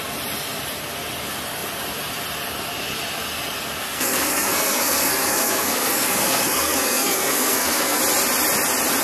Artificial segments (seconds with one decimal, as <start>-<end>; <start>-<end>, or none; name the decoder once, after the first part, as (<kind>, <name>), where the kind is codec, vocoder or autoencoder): 3.8-8.0 (codec, SNAC)